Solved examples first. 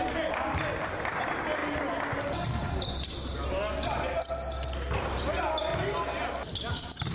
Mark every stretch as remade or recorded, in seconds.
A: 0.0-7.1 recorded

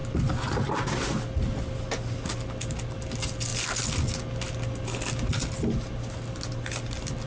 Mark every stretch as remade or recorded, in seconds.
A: 0.0-7.3 recorded

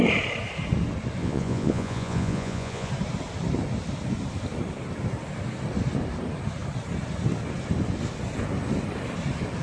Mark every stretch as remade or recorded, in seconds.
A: 0.0-1.2 recorded; 1.2-2.9 remade; 2.9-9.6 recorded

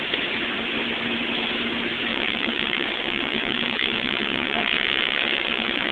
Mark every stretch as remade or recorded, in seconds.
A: 0.0-2.1 recorded; 2.1-5.9 remade

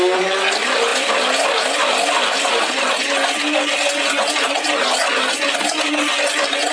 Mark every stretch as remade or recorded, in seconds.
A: 0.0-6.7 recorded

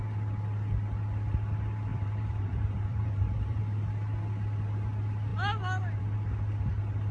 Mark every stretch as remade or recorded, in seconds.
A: 0.0-1.9 recorded; 1.9-3.6 remade; 3.6-7.1 recorded

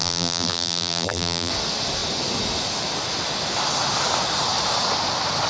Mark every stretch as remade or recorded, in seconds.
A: 0.0-1.5 remade; 1.5-5.5 recorded